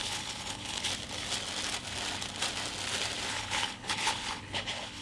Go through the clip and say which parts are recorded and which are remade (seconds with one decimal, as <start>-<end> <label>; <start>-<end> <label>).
0.0-0.9 remade; 0.9-3.3 recorded; 3.3-5.0 remade